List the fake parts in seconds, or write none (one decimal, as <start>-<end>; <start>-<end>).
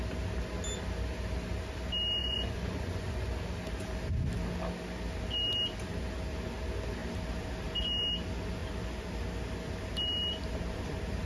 2.2-3.3